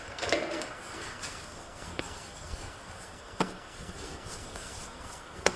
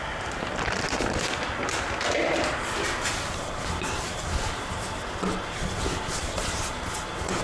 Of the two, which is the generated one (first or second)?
first